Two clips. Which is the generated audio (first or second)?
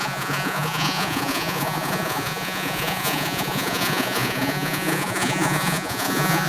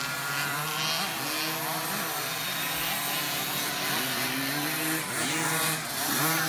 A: first